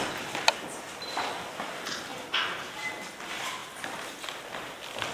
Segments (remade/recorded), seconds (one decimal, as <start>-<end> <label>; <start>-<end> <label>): 0.0-3.6 recorded; 3.6-5.1 remade